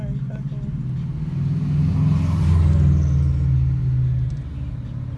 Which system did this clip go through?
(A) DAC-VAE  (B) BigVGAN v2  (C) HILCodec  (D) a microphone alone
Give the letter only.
D